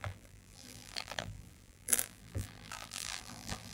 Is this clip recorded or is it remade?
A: remade